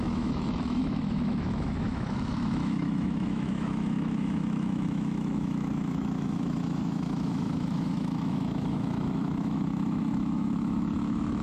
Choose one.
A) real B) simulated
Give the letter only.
B